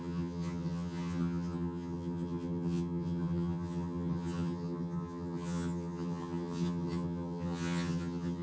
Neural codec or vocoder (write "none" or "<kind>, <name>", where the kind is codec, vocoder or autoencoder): vocoder, HiFi-GAN